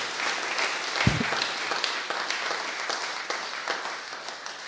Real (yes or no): yes